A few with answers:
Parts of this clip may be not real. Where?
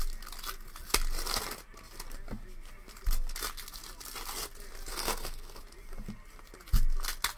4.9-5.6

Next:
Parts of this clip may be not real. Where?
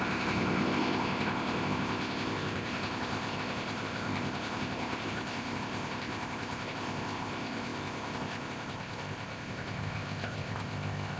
0.0-11.2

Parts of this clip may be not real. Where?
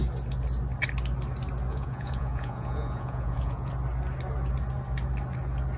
1.7-3.7